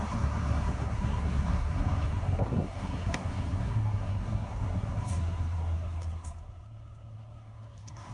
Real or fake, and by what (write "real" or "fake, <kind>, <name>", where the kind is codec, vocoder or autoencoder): fake, codec, SNAC